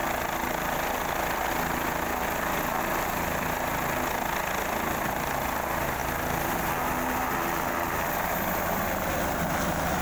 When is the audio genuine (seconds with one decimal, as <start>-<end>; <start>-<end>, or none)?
0.0-10.0